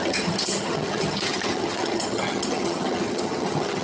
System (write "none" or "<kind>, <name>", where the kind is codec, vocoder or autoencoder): vocoder, HiFi-GAN